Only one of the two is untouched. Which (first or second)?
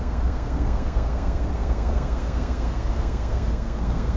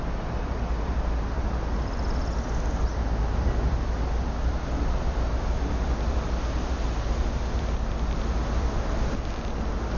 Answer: second